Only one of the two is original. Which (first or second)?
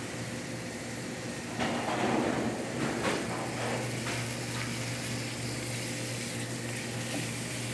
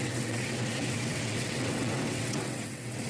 first